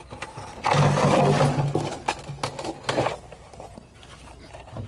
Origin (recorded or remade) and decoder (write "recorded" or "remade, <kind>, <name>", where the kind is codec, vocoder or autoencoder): recorded